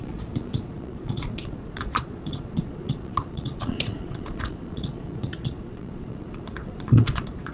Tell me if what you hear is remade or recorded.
remade